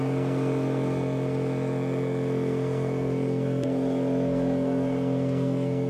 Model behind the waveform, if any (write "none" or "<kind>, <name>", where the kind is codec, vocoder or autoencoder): codec, SNAC